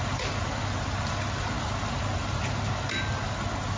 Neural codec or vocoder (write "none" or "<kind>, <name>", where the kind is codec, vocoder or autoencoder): none